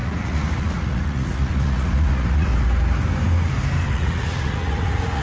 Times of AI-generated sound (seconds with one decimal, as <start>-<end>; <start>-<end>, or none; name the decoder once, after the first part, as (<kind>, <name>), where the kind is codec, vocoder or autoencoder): 0.0-2.5 (vocoder, Vocos); 3.9-5.2